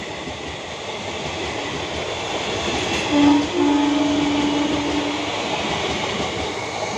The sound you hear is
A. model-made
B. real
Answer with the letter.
B